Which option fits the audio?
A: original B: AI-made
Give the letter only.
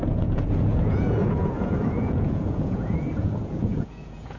B